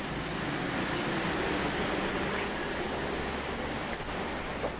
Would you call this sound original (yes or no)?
yes